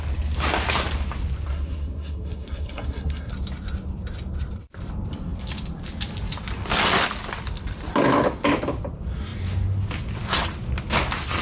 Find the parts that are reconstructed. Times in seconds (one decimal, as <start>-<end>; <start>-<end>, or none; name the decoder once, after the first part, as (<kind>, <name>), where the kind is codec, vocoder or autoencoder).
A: 1.5-3.3 (codec, SNAC)